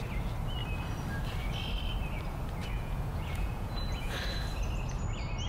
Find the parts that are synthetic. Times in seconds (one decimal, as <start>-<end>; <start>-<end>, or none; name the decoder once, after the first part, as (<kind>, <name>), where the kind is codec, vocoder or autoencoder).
2.6-4.1 (vocoder, Vocos)

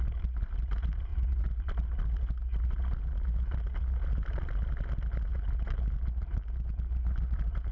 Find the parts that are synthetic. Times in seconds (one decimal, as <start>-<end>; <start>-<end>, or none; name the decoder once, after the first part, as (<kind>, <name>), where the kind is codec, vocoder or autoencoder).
none